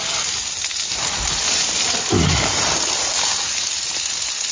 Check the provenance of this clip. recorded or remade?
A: recorded